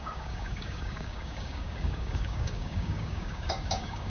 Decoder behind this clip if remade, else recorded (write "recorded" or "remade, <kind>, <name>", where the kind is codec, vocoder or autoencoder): remade, codec, DAC